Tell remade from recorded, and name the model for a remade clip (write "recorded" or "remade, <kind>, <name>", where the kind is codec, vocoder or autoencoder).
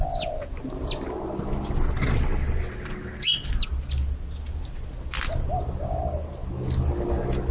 recorded